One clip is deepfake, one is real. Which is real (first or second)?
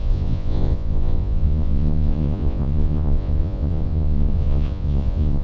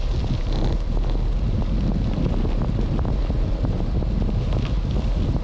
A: second